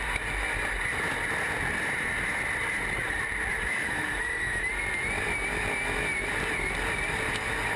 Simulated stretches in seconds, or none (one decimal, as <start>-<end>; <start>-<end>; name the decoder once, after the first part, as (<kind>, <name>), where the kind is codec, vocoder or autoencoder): 3.5-4.7 (autoencoder, DAC-VAE)